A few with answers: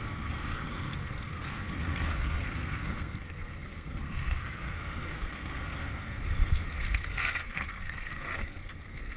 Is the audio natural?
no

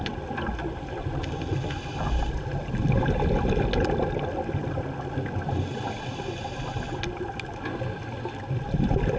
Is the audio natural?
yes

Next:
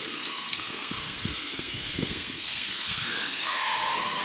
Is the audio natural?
no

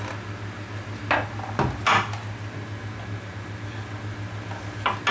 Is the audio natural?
yes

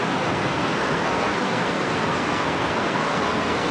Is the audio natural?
no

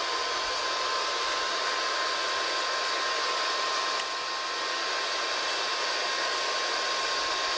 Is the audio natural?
yes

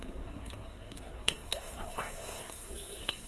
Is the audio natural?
no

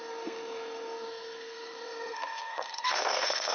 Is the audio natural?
no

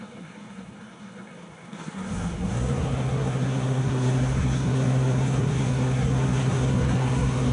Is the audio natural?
no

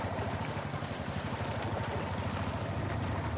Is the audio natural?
yes